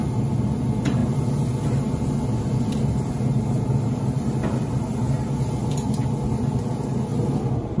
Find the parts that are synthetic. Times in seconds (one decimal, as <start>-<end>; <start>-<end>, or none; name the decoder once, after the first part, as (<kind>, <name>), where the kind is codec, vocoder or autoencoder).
none